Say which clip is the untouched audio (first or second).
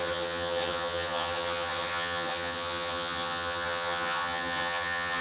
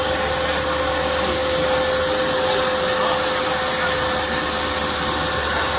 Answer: second